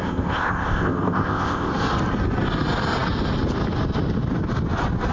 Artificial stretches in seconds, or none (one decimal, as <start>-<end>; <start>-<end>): 0.0-1.7